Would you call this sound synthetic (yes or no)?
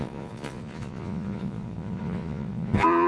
yes